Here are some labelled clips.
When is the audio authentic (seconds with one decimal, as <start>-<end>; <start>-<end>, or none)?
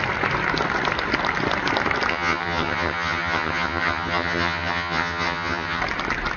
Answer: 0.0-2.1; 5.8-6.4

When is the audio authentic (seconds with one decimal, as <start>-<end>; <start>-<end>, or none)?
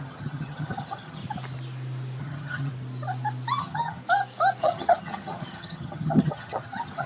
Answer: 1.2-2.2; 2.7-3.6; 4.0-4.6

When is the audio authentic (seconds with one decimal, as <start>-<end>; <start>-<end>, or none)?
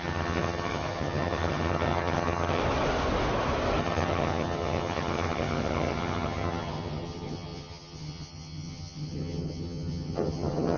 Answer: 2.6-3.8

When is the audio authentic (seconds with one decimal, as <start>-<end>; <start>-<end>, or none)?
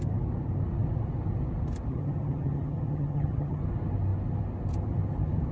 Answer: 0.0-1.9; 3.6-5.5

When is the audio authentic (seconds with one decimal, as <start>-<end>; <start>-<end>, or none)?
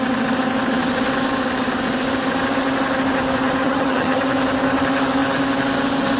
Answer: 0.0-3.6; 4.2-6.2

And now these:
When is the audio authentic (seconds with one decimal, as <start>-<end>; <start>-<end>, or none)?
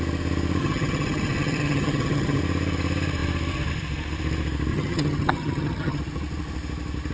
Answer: 0.0-0.6; 2.4-4.7; 6.0-7.1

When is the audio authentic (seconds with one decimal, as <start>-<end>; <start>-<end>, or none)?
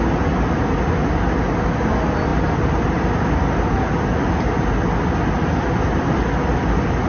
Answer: 0.0-7.1